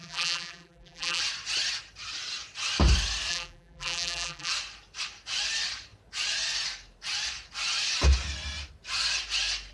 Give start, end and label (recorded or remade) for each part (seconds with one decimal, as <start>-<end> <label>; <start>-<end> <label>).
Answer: 0.0-1.2 remade; 1.2-3.3 recorded; 3.3-4.5 remade; 4.5-9.7 recorded